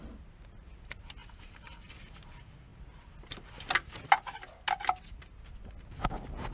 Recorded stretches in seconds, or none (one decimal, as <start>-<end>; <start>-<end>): 0.0-1.2; 1.9-6.5